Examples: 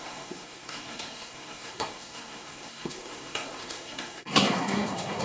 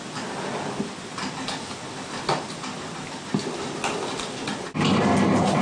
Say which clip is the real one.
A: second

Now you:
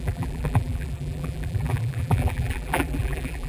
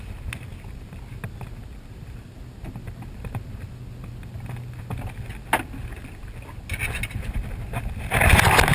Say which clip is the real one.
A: second